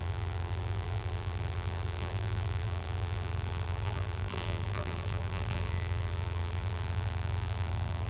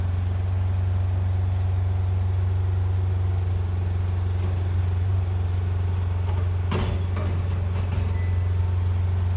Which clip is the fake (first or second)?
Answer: first